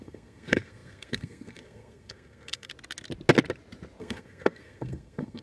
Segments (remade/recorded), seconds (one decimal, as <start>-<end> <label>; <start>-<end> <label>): 0.0-2.7 remade; 2.7-4.0 recorded; 4.0-5.4 remade